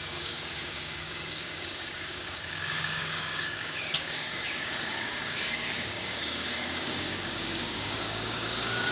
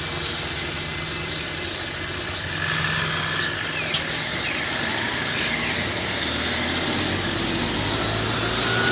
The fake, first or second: first